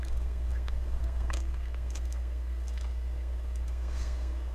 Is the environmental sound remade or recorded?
remade